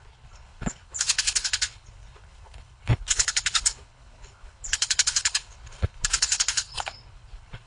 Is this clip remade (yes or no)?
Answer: yes